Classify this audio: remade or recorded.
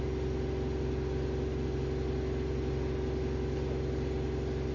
recorded